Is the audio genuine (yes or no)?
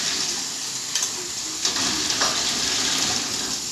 yes